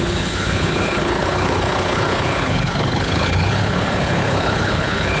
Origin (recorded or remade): remade